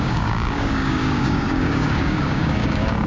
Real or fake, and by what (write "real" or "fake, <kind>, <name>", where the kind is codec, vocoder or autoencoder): fake, codec, DAC